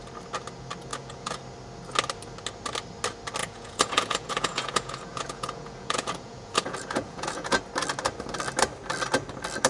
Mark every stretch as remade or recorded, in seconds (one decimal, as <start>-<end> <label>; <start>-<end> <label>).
0.0-0.9 recorded; 0.9-1.4 remade; 1.4-3.4 recorded; 3.4-7.6 remade; 7.6-9.7 recorded